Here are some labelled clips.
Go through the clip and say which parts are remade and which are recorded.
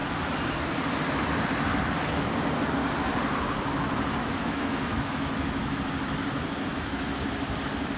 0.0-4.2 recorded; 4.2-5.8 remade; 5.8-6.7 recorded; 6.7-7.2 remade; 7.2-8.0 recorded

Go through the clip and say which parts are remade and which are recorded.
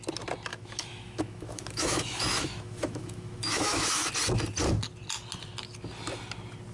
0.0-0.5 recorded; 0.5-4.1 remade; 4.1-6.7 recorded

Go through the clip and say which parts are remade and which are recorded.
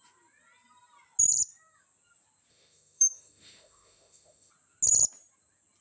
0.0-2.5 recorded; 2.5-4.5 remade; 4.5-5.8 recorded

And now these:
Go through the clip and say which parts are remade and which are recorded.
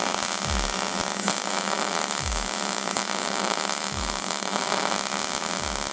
0.0-1.1 recorded; 1.1-4.6 remade; 4.6-5.9 recorded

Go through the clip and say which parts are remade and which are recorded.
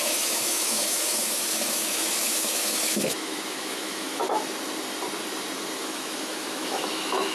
0.0-4.2 remade; 4.2-5.8 recorded; 5.8-7.3 remade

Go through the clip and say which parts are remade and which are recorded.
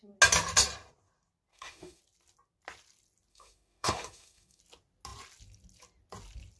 0.0-1.5 recorded; 1.5-2.0 remade; 2.0-3.3 recorded; 3.3-4.6 remade; 4.6-6.6 recorded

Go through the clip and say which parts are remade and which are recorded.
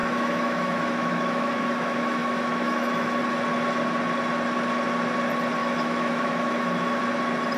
0.0-3.2 remade; 3.2-5.6 recorded; 5.6-7.0 remade; 7.0-7.6 recorded